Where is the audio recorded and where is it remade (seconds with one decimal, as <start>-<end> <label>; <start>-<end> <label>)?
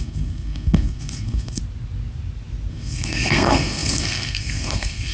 0.0-1.6 remade; 1.6-2.7 recorded; 2.7-5.1 remade